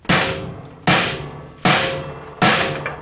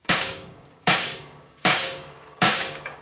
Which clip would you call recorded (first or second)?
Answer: first